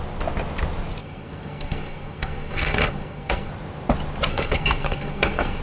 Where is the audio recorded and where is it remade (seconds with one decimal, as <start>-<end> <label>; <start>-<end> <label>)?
0.0-1.0 recorded; 1.0-3.5 remade; 3.5-4.3 recorded; 4.3-5.6 remade